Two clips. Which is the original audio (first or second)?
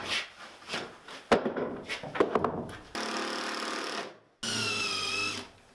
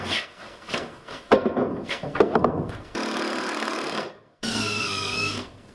first